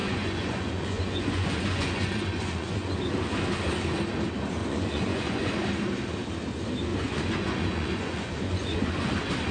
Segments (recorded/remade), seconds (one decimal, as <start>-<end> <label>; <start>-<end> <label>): 0.0-3.1 remade; 3.1-4.6 recorded; 4.6-5.5 remade; 5.5-6.9 recorded; 6.9-9.1 remade; 9.1-9.5 recorded